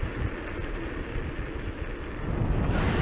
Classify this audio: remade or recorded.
recorded